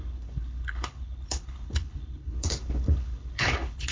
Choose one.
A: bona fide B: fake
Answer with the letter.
B